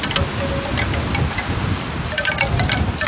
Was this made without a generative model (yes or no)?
yes